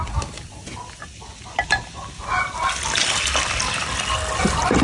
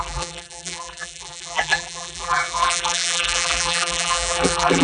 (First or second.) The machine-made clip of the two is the second